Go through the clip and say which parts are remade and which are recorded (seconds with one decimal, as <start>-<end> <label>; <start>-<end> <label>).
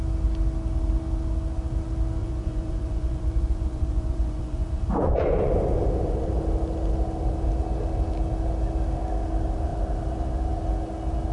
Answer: 0.0-2.2 recorded; 2.2-5.5 remade; 5.5-11.3 recorded